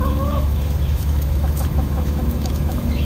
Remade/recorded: remade